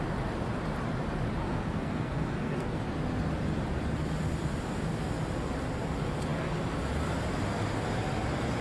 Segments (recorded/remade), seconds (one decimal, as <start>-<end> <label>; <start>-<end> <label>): 0.0-1.5 recorded; 1.5-2.8 remade; 2.8-8.6 recorded

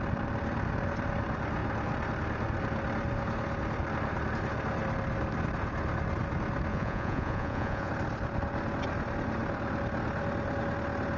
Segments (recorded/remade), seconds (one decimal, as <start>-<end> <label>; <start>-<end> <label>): 0.0-6.7 recorded; 6.7-7.9 remade; 7.9-11.2 recorded